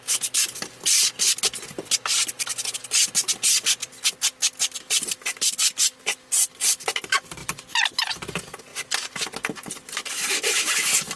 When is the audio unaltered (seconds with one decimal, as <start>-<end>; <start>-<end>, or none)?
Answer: 0.0-11.2